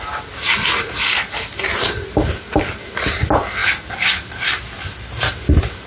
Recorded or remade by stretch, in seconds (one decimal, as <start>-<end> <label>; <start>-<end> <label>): 0.0-5.9 recorded